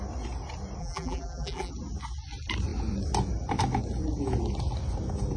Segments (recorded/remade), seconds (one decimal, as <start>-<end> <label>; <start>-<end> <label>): 0.0-0.8 recorded; 0.8-1.7 remade; 1.7-5.4 recorded